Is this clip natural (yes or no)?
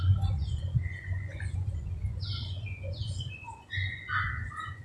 no